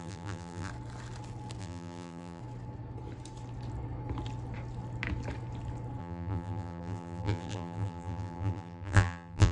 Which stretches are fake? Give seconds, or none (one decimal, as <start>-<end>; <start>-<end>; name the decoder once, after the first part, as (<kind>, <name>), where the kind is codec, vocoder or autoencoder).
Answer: 0.0-0.7 (vocoder, BigVGAN v2); 1.6-2.4; 6.0-9.5